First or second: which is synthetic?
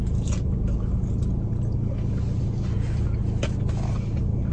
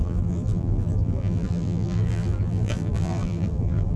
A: second